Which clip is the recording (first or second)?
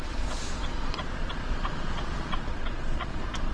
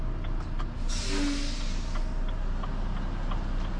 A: second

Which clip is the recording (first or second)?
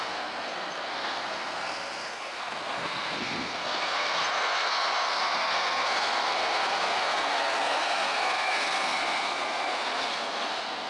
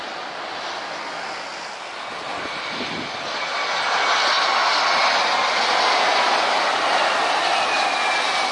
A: second